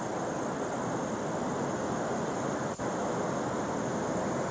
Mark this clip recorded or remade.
recorded